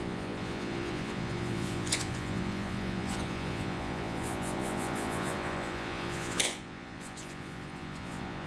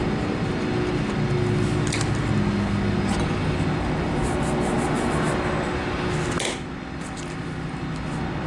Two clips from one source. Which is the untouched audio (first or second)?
second